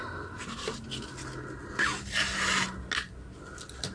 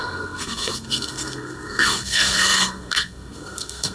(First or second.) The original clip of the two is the first